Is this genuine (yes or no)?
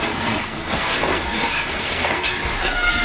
no